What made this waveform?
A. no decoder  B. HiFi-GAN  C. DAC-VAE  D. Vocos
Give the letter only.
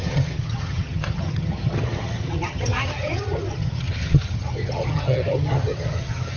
B